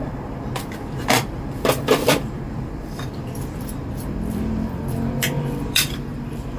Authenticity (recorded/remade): remade